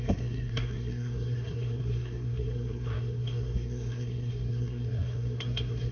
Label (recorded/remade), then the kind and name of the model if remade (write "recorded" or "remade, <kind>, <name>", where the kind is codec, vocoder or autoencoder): remade, codec, SNAC